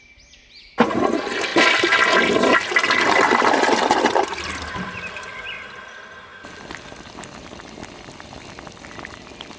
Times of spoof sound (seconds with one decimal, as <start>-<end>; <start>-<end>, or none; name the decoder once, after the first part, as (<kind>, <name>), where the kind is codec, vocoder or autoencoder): none